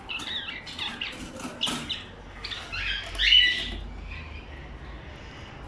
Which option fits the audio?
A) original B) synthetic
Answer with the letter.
A